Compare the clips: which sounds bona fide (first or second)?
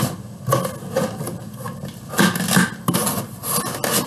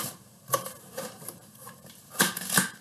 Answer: first